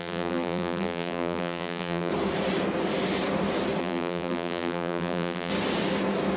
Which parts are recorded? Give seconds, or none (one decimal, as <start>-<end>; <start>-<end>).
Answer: 2.1-3.8; 5.5-6.4